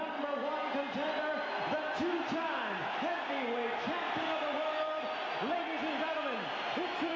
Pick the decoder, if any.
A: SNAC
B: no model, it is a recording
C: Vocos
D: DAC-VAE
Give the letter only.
B